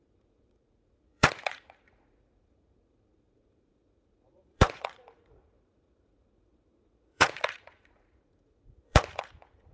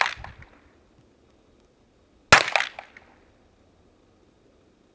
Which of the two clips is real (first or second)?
second